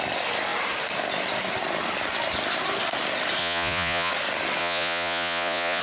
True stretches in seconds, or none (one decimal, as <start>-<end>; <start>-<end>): 0.0-3.4; 4.1-4.6